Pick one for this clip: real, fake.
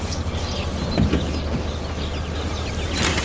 real